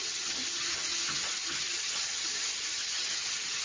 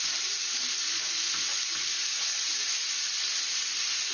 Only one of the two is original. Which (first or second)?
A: second